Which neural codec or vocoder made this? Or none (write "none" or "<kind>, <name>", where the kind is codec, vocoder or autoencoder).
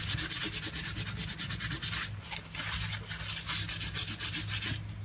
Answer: none